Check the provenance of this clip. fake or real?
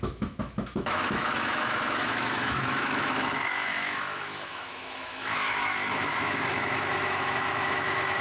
fake